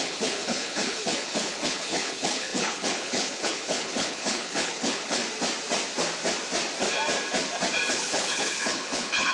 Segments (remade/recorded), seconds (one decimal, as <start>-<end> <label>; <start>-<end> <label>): 0.0-5.2 remade; 5.2-7.9 recorded; 7.9-9.3 remade